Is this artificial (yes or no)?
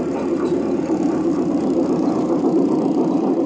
no